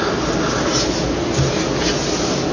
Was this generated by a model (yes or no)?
no